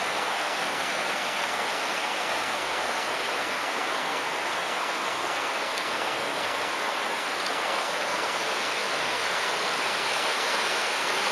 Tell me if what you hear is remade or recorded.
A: remade